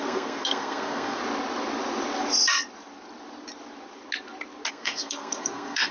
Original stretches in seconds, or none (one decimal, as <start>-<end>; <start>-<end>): 1.2-4.7